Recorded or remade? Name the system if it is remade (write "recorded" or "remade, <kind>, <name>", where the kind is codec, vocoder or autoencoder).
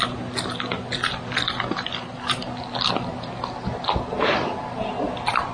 recorded